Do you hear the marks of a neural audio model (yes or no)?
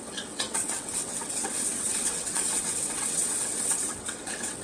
yes